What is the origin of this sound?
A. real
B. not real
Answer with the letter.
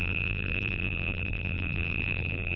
B